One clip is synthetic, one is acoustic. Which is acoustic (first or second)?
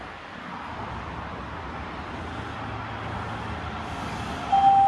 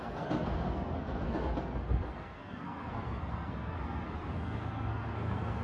first